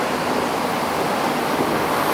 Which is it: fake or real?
real